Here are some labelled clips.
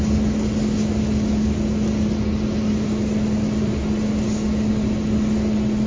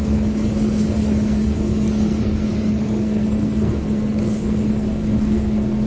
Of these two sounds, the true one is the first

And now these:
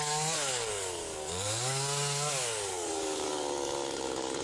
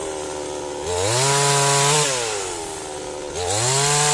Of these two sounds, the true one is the second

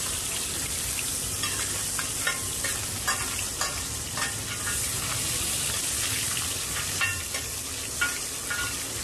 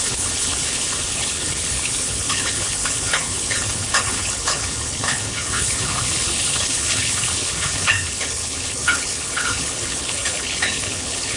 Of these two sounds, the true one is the first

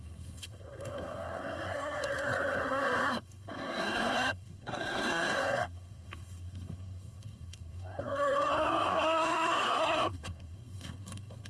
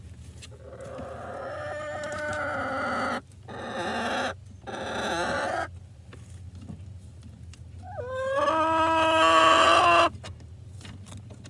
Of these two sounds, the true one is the second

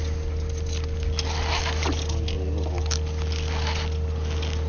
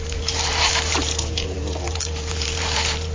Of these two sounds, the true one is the first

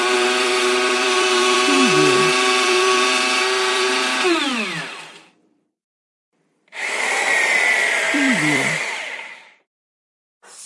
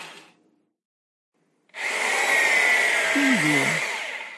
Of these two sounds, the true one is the second